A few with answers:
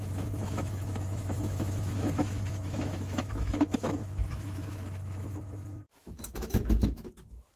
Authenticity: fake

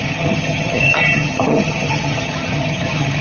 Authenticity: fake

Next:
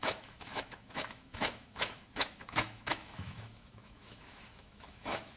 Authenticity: fake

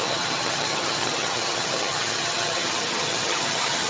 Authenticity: fake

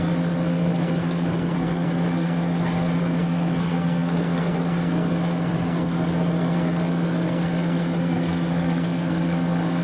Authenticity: fake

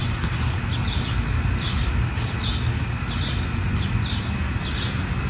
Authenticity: real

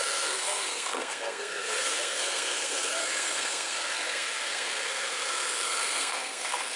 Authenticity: fake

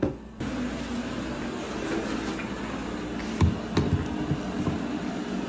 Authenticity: real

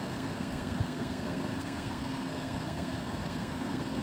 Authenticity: fake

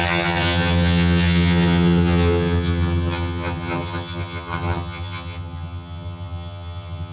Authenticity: fake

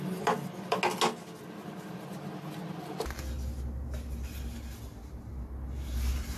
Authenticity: real